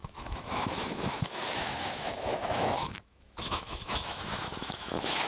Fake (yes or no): yes